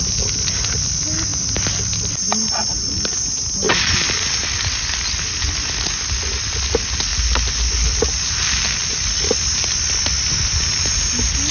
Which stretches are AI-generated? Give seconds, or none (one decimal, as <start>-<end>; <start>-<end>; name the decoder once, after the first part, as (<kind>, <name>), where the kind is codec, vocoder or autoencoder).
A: none